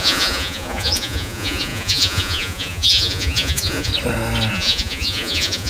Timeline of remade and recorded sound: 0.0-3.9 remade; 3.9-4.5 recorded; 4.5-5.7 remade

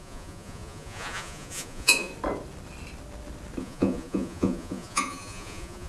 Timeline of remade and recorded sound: 0.0-2.1 remade; 2.1-3.6 recorded; 3.6-5.9 remade

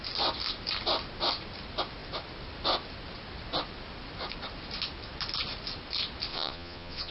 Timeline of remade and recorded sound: 0.0-6.3 recorded; 6.3-7.1 remade

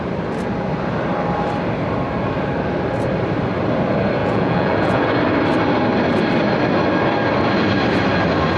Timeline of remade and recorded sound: 0.0-4.2 recorded; 4.2-5.0 remade; 5.0-8.6 recorded

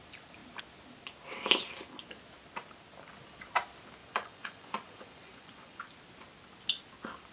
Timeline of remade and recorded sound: 0.0-4.0 recorded; 4.0-5.8 remade; 5.8-7.3 recorded

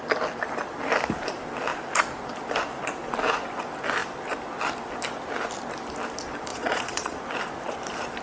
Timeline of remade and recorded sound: 0.0-6.5 recorded; 6.5-7.2 remade; 7.2-8.2 recorded